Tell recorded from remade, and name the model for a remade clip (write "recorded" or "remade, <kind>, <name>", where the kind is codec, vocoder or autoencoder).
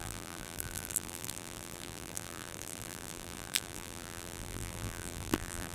remade, vocoder, BigVGAN v2